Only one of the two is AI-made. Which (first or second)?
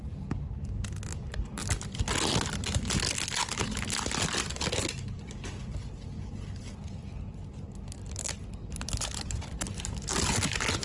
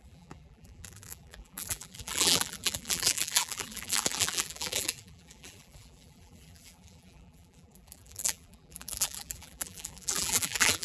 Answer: second